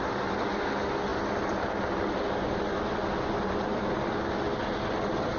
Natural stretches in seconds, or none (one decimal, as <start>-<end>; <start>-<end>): 0.0-5.4